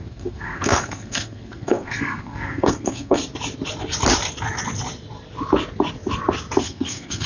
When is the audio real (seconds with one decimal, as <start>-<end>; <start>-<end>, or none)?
3.2-6.6